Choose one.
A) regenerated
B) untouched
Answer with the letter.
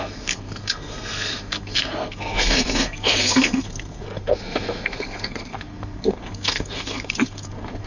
A